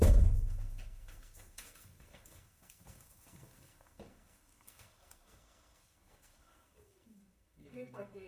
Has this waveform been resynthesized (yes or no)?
yes